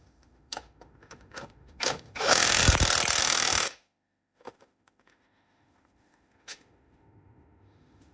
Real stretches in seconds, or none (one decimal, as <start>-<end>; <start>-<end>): 2.6-3.2